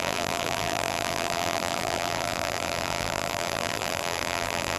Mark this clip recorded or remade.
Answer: remade